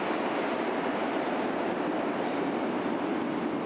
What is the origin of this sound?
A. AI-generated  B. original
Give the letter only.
B